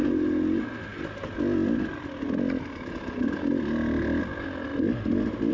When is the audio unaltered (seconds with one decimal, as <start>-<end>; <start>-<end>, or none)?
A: 0.0-5.5